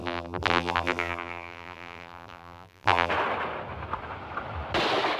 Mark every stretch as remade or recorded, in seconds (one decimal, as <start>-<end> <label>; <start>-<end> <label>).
0.0-3.1 remade; 3.1-5.2 recorded